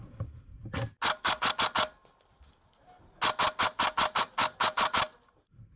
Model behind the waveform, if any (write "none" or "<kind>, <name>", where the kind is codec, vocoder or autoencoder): none